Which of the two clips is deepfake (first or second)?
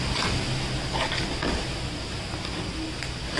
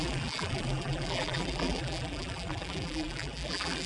second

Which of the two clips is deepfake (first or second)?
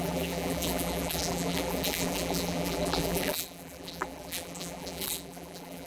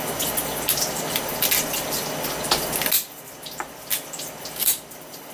first